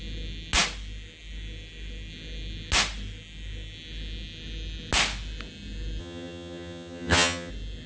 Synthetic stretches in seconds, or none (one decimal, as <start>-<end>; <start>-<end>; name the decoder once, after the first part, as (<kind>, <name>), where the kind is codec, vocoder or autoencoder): 6.0-7.5 (vocoder, HiFi-GAN)